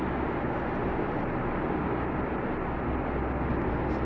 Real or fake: real